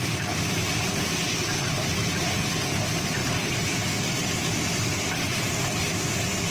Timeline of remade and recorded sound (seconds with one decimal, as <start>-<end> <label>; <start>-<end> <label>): 0.0-3.2 recorded; 3.2-4.0 remade; 4.0-6.5 recorded